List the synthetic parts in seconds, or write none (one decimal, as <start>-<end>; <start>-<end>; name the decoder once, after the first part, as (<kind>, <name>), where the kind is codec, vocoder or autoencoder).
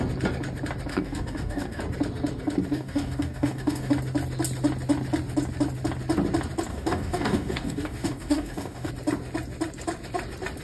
0.9-1.8 (codec, DAC); 2.7-3.9; 6.7-8.9